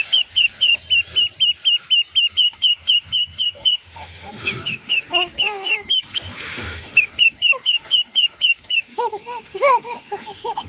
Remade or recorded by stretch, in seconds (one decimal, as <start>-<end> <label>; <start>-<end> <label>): 0.0-0.7 remade; 0.7-2.3 recorded; 2.3-10.7 remade